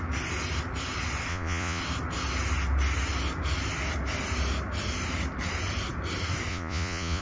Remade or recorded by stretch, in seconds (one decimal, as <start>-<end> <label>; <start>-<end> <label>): 0.0-1.3 recorded; 1.3-1.8 remade; 1.8-6.5 recorded; 6.5-7.2 remade